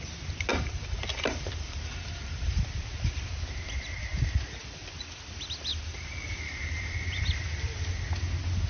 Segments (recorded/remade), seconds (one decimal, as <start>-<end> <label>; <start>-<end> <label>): 0.0-0.5 recorded; 0.5-2.6 remade; 2.6-5.7 recorded; 5.7-7.2 remade; 7.2-8.7 recorded

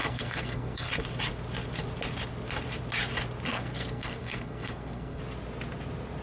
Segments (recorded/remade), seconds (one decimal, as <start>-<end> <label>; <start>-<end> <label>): 0.0-0.9 remade; 0.9-3.5 recorded; 3.5-5.2 remade; 5.2-6.2 recorded